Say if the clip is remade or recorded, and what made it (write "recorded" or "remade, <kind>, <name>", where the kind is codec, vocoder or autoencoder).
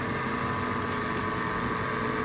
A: recorded